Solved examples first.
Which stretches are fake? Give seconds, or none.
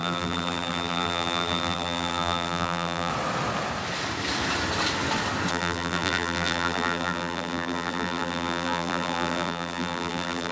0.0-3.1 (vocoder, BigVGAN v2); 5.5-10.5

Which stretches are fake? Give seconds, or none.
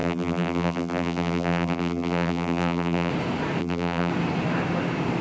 0.0-3.1 (vocoder, BigVGAN v2); 3.6-4.1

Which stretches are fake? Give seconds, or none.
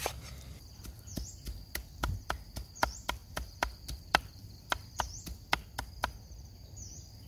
3.2-4.9 (vocoder, BigVGAN v2)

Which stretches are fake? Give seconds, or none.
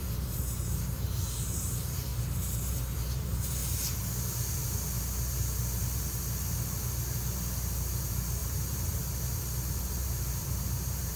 0.0-2.1 (vocoder, BigVGAN v2); 2.7-3.6; 8.0-11.2